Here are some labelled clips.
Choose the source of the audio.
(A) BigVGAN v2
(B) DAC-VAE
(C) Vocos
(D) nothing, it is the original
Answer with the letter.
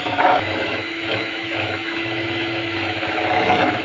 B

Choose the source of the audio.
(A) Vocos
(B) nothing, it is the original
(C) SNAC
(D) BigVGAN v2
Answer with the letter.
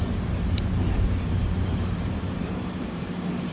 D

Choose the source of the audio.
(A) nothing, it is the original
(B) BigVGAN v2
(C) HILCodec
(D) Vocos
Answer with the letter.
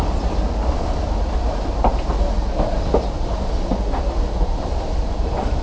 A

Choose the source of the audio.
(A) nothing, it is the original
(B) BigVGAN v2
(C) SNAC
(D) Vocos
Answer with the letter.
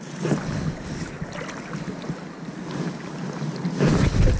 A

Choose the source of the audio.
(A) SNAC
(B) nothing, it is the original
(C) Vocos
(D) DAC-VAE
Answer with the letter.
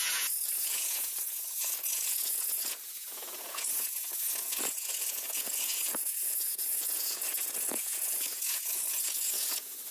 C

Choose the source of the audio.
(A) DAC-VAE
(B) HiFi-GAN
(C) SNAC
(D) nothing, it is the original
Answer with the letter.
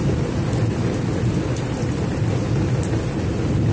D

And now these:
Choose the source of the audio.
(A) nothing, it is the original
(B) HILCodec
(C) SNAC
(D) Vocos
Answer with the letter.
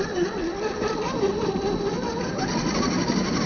A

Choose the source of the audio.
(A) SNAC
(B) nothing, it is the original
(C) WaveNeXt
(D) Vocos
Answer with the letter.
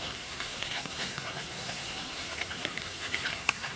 A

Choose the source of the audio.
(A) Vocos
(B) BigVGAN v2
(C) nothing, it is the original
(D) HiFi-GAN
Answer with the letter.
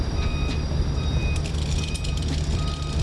B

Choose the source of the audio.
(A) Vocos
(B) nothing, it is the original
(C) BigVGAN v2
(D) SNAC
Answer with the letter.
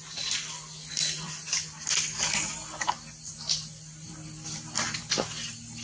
C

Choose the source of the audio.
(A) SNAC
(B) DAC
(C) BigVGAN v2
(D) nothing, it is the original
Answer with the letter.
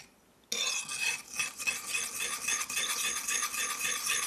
D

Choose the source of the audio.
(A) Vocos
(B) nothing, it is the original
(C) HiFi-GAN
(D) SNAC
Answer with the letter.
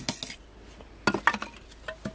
B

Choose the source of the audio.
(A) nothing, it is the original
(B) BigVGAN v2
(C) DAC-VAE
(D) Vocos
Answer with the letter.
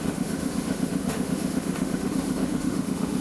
C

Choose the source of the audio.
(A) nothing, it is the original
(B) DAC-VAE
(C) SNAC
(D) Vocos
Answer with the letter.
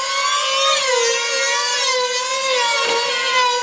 A